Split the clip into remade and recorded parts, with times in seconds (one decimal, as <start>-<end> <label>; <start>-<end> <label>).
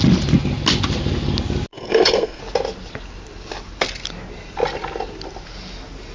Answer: 0.0-1.7 recorded; 1.7-2.4 remade; 2.4-6.1 recorded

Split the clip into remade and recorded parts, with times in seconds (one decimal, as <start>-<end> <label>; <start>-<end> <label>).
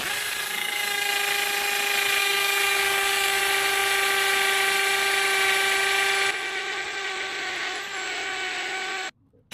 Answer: 0.0-0.5 recorded; 0.5-1.1 remade; 1.1-2.2 recorded; 2.2-3.4 remade; 3.4-9.5 recorded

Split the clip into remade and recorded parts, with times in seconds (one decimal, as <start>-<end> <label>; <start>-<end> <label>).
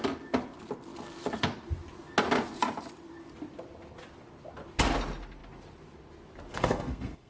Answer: 0.0-6.5 recorded; 6.5-7.3 remade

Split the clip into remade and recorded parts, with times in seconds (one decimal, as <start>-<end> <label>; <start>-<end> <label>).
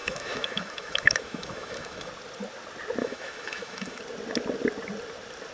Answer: 0.0-2.1 remade; 2.1-3.0 recorded; 3.0-4.0 remade; 4.0-5.5 recorded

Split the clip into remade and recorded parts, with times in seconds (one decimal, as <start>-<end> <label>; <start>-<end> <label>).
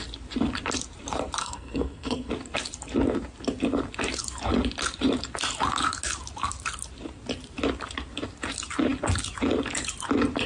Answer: 0.0-1.4 recorded; 1.4-2.3 remade; 2.3-10.5 recorded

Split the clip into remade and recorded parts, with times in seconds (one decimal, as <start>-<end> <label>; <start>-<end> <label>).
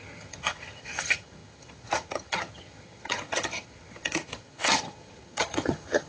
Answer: 0.0-6.1 remade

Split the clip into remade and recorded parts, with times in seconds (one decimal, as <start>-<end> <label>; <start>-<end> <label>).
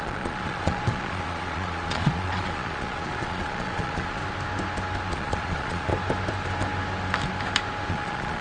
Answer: 0.0-4.2 remade; 4.2-5.1 recorded; 5.1-5.9 remade; 5.9-7.9 recorded; 7.9-8.4 remade